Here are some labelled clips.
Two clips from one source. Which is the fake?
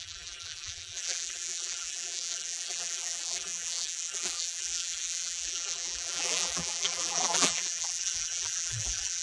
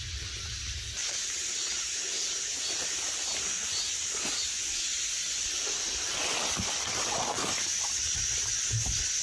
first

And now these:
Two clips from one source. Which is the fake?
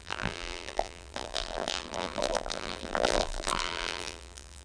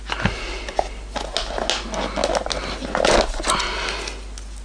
first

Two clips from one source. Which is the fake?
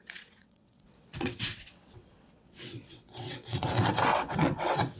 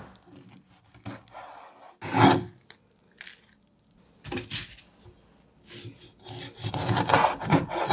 first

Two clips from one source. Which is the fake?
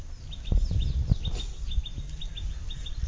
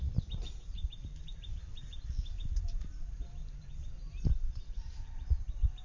second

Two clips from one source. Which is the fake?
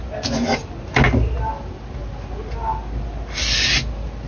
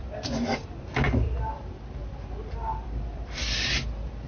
second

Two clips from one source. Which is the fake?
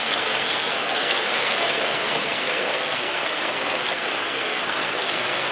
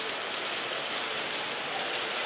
first